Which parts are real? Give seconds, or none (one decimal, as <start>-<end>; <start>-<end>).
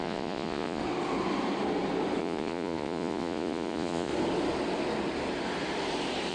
0.8-2.2; 4.1-6.3